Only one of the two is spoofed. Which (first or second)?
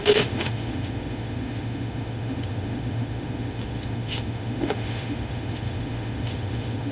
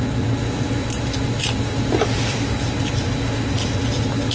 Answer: first